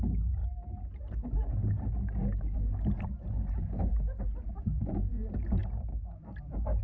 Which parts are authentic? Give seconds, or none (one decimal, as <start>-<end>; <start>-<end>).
0.0-6.8